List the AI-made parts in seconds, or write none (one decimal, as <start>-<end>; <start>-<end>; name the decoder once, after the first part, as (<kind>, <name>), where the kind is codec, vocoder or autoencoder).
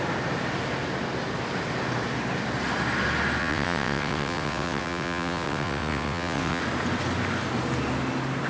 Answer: 3.4-6.6 (vocoder, WaveNeXt)